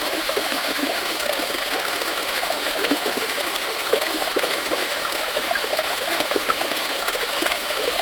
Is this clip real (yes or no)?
no